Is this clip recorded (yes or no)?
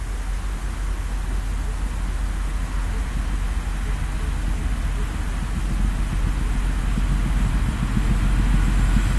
yes